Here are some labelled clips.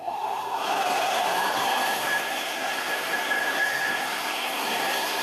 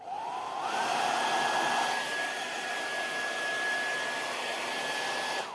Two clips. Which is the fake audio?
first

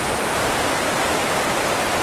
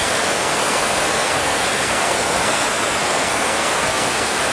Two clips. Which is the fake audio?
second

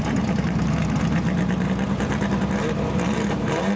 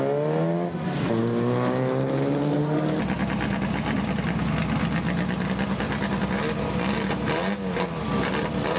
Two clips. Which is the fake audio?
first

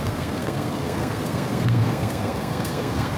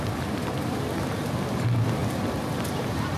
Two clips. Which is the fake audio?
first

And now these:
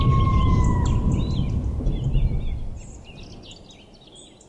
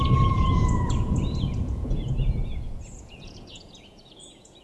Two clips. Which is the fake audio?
second